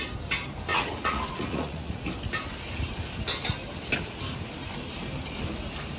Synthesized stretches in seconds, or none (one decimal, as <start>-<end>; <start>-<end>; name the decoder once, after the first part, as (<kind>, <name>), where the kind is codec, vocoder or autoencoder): 0.7-2.1 (vocoder, Vocos)